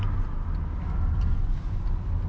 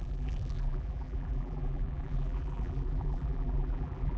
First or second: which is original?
first